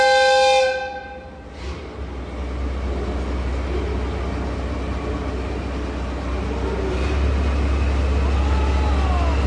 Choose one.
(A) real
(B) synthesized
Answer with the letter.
A